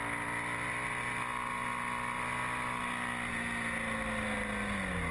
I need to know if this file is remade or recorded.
recorded